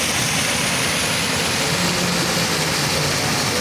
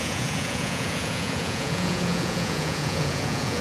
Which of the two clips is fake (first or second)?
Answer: second